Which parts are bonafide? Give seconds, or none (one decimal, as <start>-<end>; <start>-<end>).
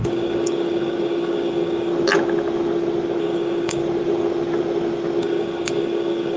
1.9-3.2; 3.8-5.2